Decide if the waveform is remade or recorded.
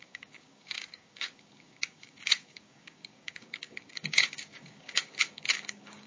remade